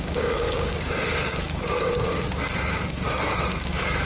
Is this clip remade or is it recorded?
remade